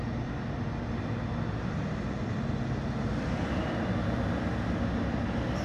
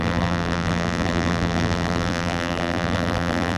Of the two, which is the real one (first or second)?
first